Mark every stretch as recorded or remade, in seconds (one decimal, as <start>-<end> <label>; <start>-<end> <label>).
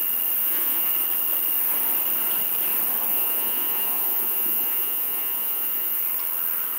0.0-0.4 recorded; 0.4-0.9 remade; 0.9-3.1 recorded; 3.1-6.0 remade; 6.0-6.8 recorded